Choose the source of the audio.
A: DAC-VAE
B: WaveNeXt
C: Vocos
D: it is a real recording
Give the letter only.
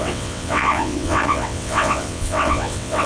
B